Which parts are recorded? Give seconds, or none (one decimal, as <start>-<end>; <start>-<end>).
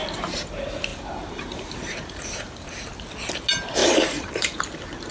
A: 0.5-0.9; 2.8-3.8; 4.6-5.1